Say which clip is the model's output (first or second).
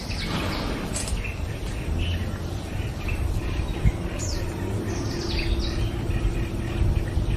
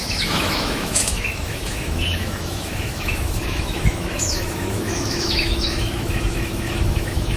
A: second